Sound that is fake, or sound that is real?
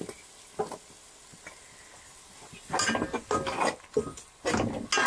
real